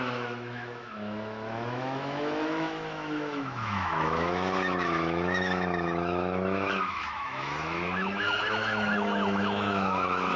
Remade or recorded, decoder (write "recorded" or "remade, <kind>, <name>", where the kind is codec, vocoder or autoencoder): remade, autoencoder, DAC-VAE